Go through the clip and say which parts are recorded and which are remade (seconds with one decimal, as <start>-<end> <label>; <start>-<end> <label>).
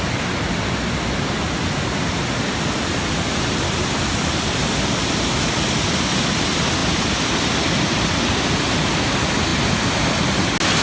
0.0-10.8 recorded